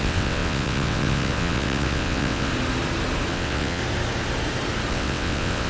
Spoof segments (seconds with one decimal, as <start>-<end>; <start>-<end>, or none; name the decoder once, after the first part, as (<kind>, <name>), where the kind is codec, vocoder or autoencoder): 0.0-2.5 (vocoder, WaveNeXt); 3.3-3.8; 4.9-5.7